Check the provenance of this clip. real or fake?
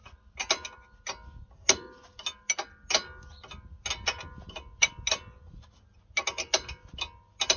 real